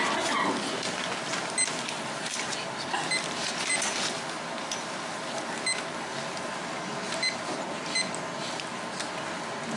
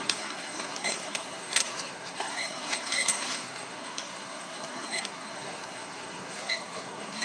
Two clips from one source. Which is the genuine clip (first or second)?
first